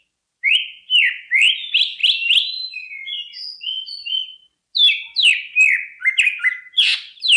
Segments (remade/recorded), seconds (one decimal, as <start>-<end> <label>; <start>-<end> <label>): 0.0-7.4 recorded